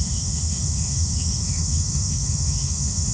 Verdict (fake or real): fake